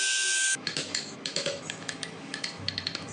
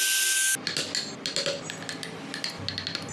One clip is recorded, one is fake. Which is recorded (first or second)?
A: second